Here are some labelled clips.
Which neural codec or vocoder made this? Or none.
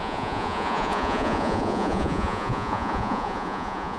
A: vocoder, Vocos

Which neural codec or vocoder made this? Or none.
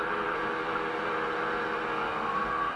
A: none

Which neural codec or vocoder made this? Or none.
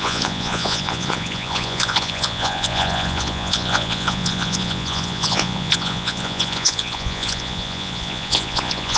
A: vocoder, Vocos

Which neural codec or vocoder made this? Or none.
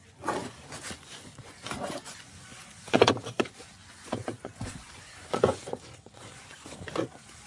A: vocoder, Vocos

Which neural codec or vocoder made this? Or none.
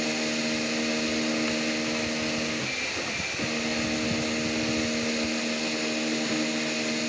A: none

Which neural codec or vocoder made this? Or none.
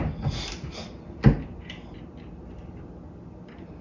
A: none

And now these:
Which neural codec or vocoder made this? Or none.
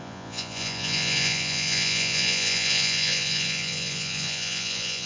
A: vocoder, Vocos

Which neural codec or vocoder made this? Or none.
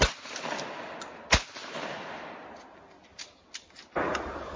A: none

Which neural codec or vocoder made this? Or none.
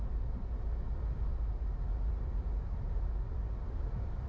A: none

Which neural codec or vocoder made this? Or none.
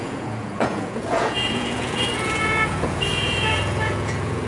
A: vocoder, Vocos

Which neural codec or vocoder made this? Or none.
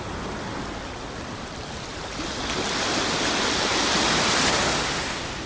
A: none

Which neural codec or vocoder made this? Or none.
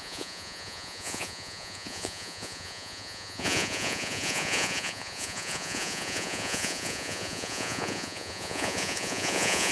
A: vocoder, Vocos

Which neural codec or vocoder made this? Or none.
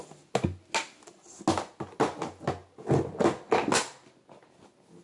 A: none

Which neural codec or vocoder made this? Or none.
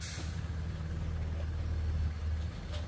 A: none